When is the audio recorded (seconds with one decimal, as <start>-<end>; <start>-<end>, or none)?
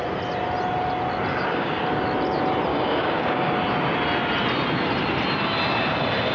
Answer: 0.0-1.3; 1.8-2.7; 3.5-6.3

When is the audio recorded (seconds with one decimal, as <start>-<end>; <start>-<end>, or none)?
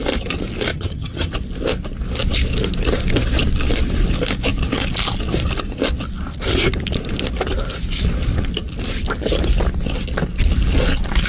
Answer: 0.0-0.7; 1.3-11.3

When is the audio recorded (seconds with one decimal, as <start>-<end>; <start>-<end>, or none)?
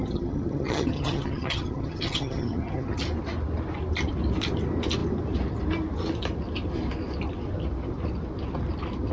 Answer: 3.0-9.1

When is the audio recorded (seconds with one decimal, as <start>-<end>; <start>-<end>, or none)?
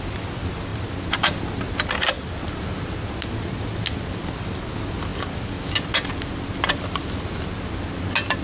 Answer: 0.0-8.4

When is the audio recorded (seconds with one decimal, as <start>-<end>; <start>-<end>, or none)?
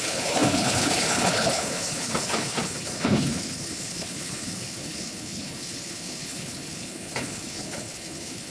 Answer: none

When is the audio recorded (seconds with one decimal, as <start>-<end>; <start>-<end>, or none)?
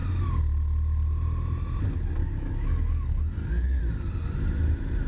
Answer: 0.0-2.2; 3.8-5.1